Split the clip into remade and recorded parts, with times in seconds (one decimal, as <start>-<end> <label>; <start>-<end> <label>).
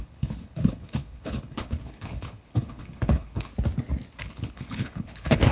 0.0-3.5 remade; 3.5-4.3 recorded; 4.3-5.5 remade